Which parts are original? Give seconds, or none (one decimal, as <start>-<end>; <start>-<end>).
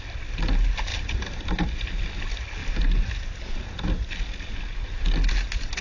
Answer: 0.0-0.9; 1.7-2.6; 3.5-5.8